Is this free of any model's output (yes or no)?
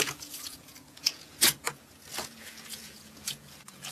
no